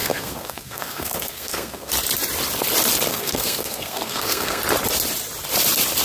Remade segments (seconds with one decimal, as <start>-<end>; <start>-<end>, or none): 0.0-1.9; 3.1-4.6